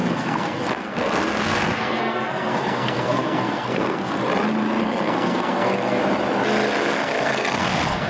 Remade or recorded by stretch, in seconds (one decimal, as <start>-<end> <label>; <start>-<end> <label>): 0.0-4.2 remade; 4.2-4.8 recorded; 4.8-6.0 remade; 6.0-6.8 recorded; 6.8-8.1 remade